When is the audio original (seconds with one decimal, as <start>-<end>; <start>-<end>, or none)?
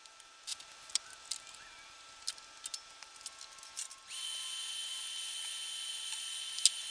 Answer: 0.0-6.9